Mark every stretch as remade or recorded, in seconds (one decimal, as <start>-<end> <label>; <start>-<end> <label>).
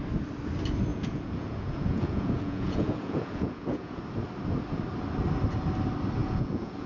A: 0.0-0.9 recorded; 0.9-4.0 remade; 4.0-6.2 recorded; 6.2-6.9 remade